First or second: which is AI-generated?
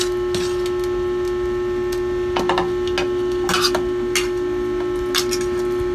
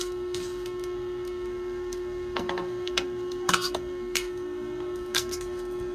second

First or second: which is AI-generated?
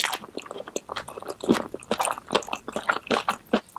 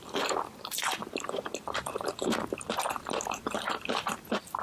second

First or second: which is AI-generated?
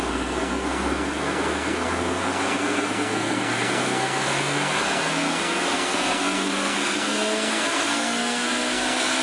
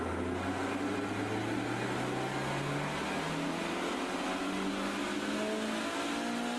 first